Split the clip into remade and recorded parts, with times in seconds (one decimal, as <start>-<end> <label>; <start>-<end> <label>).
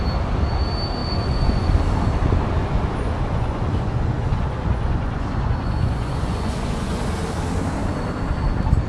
0.0-1.0 recorded; 1.0-1.7 remade; 1.7-2.6 recorded; 2.6-7.0 remade; 7.0-8.9 recorded